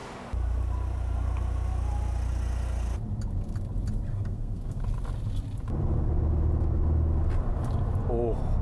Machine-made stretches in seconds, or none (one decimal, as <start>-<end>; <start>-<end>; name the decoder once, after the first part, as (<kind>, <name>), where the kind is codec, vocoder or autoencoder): 4.1-4.8 (codec, SNAC)